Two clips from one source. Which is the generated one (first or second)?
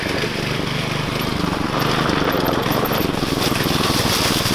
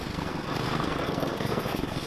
second